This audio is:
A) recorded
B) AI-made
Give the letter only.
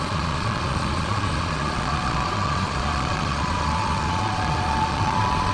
B